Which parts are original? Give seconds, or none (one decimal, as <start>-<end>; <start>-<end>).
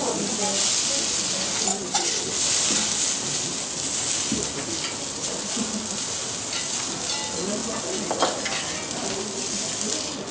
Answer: 0.0-1.7; 2.3-10.3